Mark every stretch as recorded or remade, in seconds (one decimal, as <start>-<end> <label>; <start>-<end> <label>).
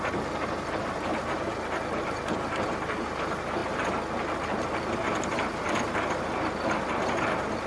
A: 0.0-7.7 recorded